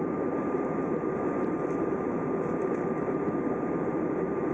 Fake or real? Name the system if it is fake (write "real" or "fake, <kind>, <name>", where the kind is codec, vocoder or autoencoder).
fake, vocoder, BigVGAN v2